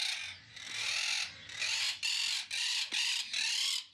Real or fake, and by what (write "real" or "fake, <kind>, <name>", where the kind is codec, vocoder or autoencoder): real